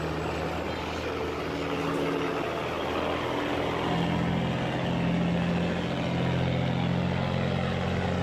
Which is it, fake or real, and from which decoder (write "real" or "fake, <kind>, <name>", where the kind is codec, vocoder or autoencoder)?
real